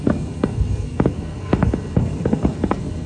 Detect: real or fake fake